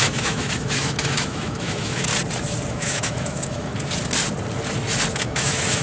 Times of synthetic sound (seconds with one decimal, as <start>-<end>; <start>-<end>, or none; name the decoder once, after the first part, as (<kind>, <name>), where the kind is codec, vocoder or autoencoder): 0.0-2.1 (autoencoder, DAC-VAE); 2.7-3.7; 5.1-5.8